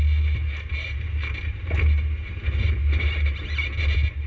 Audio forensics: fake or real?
real